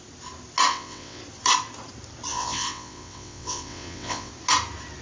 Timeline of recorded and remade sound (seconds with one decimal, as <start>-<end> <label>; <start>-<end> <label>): 0.0-0.7 recorded; 0.7-1.2 remade; 1.2-2.3 recorded; 2.3-4.3 remade; 4.3-5.0 recorded

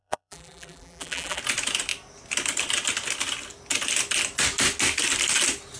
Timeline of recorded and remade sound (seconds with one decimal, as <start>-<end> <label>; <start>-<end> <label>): 0.0-1.4 remade; 1.4-5.8 recorded